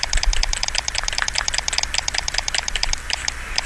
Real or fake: fake